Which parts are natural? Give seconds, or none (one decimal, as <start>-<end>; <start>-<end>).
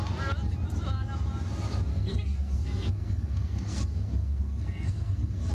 0.0-1.9